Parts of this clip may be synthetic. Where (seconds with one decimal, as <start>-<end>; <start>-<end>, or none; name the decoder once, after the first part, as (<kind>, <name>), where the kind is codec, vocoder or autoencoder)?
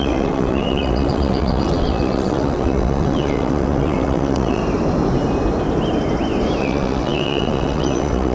0.0-4.6 (vocoder, WaveNeXt); 6.6-8.3